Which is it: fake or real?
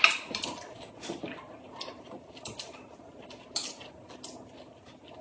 real